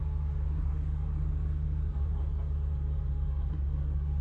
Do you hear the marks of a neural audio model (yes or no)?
yes